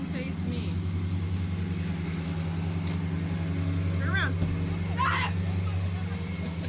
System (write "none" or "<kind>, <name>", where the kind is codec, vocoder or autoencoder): none